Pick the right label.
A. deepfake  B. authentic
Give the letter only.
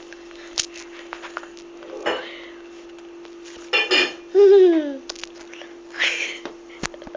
B